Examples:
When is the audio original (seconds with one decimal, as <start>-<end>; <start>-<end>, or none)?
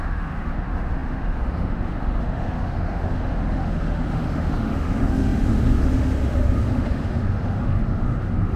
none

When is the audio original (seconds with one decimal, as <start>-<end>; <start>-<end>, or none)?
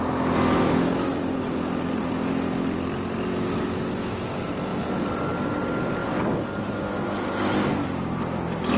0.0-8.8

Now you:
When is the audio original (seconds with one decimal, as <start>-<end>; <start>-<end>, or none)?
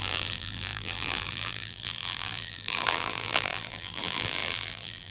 none